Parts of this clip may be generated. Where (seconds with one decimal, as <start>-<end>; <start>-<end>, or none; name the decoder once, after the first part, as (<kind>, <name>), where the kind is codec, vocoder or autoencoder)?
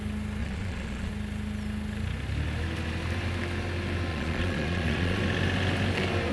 0.4-1.1 (vocoder, Vocos); 4.1-5.2